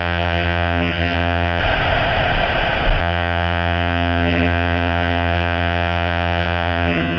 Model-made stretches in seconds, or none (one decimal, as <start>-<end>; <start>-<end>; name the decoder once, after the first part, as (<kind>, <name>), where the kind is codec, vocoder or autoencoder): 0.0-1.6 (vocoder, HiFi-GAN); 3.0-7.2